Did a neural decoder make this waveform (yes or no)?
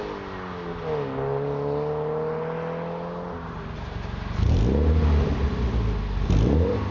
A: no